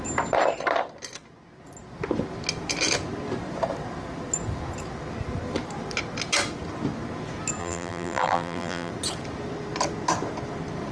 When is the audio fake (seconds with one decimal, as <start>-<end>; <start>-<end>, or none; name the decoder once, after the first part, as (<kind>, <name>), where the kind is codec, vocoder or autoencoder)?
7.6-8.9 (vocoder, BigVGAN v2)